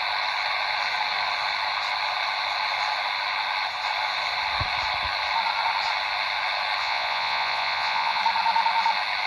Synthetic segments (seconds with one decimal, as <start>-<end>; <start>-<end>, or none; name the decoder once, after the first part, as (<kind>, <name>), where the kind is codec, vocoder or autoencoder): 6.8-8.2 (vocoder, Vocos)

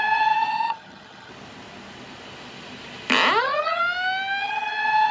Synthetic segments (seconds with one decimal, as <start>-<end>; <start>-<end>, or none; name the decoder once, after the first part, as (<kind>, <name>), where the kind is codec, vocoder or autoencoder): 0.0-1.3 (vocoder, HiFi-GAN); 3.4-3.8; 4.4-5.1